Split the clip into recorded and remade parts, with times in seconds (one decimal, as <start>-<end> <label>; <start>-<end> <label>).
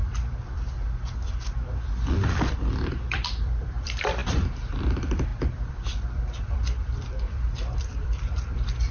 0.0-2.1 recorded; 2.1-8.9 remade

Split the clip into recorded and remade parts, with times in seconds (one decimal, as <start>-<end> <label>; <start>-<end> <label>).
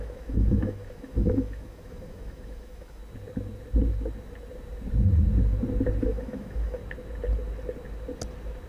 0.0-3.0 remade; 3.0-6.0 recorded; 6.0-6.8 remade; 6.8-8.7 recorded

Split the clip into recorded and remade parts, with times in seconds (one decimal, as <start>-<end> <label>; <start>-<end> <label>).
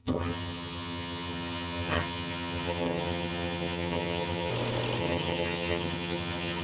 0.0-4.5 remade; 4.5-5.0 recorded; 5.0-6.6 remade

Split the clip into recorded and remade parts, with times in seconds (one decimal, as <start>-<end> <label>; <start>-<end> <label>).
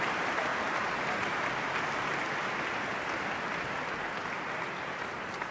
0.0-5.5 recorded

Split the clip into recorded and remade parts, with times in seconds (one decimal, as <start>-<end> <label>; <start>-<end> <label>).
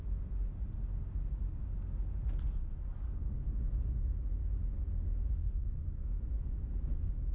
0.0-5.4 recorded; 5.4-6.2 remade; 6.2-7.3 recorded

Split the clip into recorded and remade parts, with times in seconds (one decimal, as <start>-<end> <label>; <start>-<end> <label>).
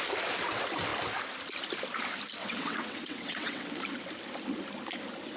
0.0-2.4 recorded; 2.4-3.8 remade; 3.8-5.4 recorded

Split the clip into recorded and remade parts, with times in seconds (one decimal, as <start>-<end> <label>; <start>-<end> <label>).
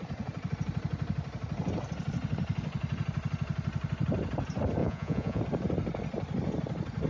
0.0-4.8 recorded; 4.8-5.4 remade; 5.4-7.1 recorded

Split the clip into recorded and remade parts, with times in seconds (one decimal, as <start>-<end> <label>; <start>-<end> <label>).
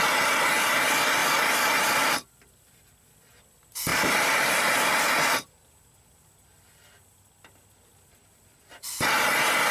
0.0-1.2 recorded; 1.2-2.7 remade; 2.7-3.9 recorded; 3.9-5.0 remade; 5.0-9.7 recorded